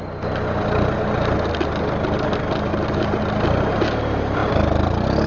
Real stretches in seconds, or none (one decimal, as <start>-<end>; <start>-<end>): 0.0-2.7; 3.2-4.4